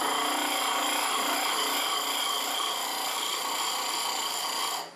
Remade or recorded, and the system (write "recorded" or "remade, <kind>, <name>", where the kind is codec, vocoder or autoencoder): recorded